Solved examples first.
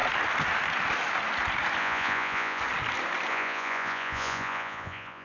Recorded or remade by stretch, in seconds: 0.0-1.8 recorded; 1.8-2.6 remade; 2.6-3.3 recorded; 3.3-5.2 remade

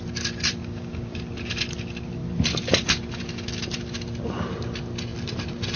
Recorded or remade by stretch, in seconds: 0.0-0.6 recorded; 0.6-1.2 remade; 1.2-5.8 recorded

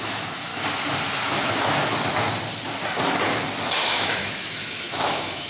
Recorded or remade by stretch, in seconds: 0.0-0.5 remade; 0.5-3.8 recorded; 3.8-5.5 remade

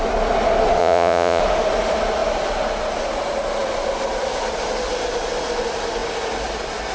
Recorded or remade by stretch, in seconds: 0.0-0.8 recorded; 0.8-1.4 remade; 1.4-6.9 recorded